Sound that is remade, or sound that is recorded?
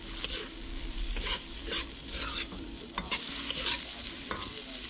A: recorded